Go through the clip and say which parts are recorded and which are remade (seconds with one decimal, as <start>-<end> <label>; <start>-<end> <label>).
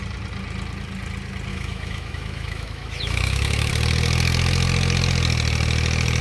0.0-1.5 recorded; 1.5-3.7 remade; 3.7-6.2 recorded